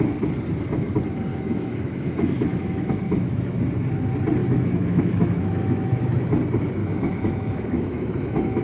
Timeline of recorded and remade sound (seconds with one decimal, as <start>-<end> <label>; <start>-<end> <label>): 0.0-1.3 recorded; 1.3-3.6 remade; 3.6-4.4 recorded; 4.4-6.2 remade; 6.2-6.8 recorded; 6.8-8.6 remade